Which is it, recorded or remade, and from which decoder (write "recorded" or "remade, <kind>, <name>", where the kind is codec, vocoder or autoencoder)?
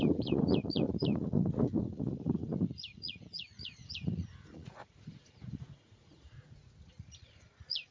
remade, vocoder, Vocos